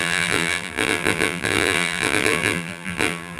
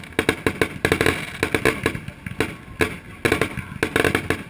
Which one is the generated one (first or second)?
first